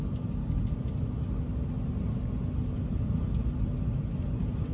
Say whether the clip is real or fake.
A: real